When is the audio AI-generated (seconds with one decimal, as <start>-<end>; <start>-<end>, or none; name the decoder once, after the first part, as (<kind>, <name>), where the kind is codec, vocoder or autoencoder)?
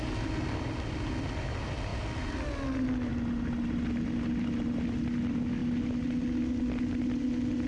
none